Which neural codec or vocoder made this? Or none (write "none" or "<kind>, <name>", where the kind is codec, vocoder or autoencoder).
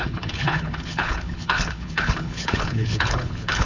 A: codec, HILCodec